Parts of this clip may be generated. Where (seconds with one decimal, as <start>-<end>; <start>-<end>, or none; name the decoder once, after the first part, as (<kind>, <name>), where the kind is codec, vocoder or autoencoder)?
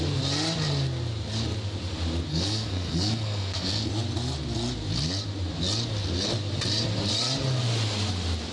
2.3-3.9 (codec, SNAC)